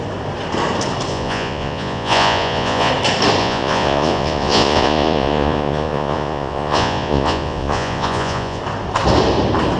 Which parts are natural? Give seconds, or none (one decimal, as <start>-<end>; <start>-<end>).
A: 0.0-1.1; 2.9-3.4; 8.6-9.8